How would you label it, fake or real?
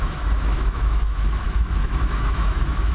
fake